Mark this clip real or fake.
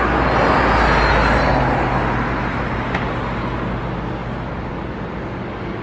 real